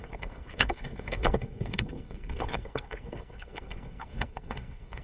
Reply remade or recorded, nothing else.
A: remade